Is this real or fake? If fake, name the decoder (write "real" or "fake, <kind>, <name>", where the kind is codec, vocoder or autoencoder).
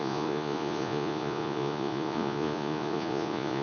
fake, vocoder, Vocos